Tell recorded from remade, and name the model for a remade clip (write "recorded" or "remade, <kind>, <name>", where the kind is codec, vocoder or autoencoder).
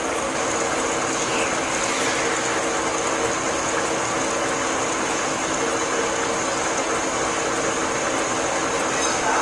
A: recorded